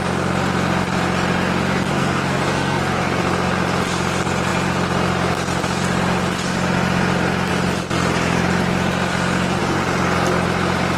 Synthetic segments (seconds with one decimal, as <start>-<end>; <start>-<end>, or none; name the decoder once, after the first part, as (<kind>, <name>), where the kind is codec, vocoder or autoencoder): 1.9-3.2 (codec, SNAC)